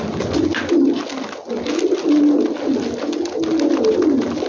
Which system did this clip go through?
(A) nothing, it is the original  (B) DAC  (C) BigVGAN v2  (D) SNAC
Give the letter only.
A